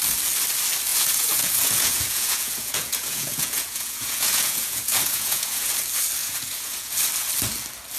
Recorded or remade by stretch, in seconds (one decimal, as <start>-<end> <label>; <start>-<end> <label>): 0.0-0.9 recorded; 0.9-5.7 remade; 5.7-6.2 recorded; 6.2-6.9 remade; 6.9-8.0 recorded